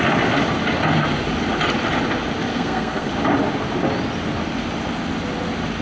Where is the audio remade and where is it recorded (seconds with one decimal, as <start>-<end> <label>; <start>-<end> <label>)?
0.0-2.5 recorded; 2.5-3.1 remade; 3.1-5.8 recorded